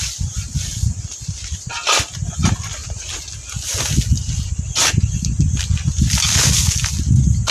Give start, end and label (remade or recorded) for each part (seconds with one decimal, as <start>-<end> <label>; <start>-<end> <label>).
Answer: 0.0-7.5 recorded